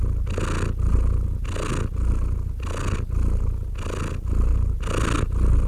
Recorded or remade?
recorded